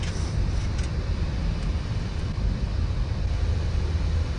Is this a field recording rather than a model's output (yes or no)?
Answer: yes